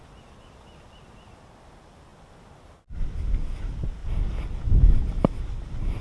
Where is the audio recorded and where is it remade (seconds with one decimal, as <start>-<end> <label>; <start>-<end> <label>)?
0.0-6.0 recorded